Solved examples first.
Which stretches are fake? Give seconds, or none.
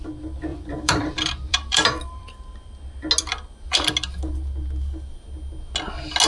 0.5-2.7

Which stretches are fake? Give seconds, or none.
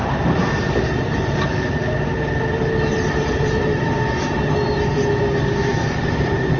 0.0-4.0; 5.6-6.6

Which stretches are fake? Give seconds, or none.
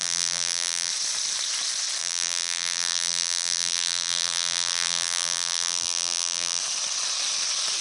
0.0-0.9; 2.0-6.6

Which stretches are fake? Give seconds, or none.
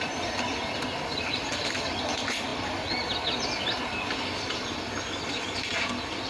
none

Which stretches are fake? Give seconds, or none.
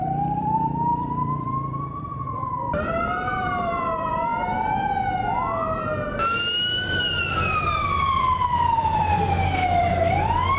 0.0-4.3; 7.2-9.0; 9.8-10.6